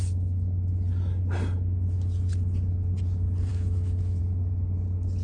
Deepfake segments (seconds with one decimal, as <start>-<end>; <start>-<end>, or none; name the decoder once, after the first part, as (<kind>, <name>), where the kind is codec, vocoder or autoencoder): 3.5-4.2 (autoencoder, DAC-VAE)